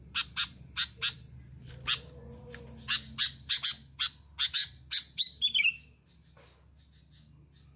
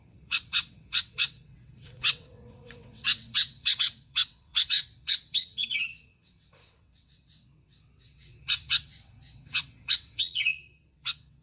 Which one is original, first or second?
first